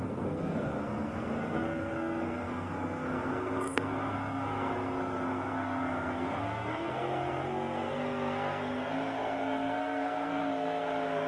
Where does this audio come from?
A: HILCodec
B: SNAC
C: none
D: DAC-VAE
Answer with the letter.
B